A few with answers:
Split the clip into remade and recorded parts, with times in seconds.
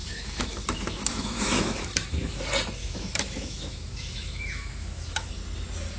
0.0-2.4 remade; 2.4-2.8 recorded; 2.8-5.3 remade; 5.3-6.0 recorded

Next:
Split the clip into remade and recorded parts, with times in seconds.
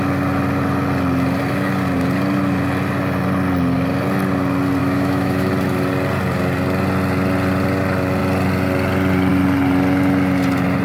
0.0-4.8 recorded; 4.8-5.5 remade; 5.5-10.8 recorded